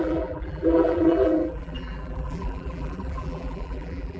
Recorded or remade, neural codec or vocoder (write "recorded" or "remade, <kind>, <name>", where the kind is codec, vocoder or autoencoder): remade, vocoder, BigVGAN v2